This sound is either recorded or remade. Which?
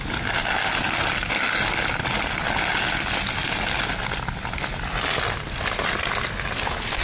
recorded